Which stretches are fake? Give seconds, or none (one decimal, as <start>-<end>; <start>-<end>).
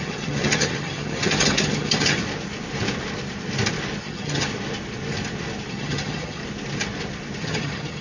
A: 0.0-2.2; 4.0-4.5; 5.7-6.4; 7.4-8.0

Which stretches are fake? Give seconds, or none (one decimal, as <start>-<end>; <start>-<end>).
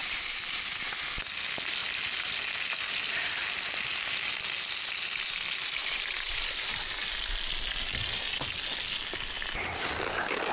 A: 0.0-0.6; 5.8-6.7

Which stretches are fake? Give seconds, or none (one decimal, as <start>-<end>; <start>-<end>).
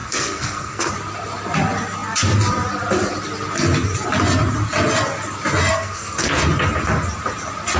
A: 0.0-0.9; 5.7-6.4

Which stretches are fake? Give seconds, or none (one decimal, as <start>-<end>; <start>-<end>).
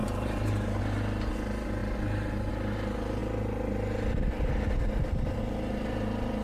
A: 0.0-0.8